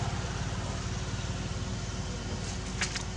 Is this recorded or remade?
recorded